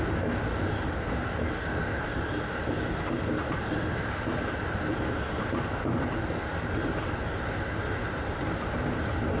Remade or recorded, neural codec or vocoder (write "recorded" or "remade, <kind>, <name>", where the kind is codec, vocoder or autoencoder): recorded